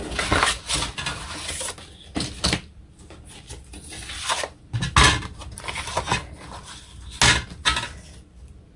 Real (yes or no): yes